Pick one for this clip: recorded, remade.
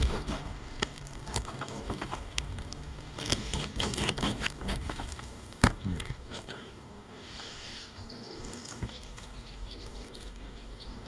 remade